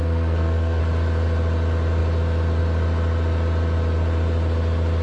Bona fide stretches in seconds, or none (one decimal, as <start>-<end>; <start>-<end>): 0.8-5.0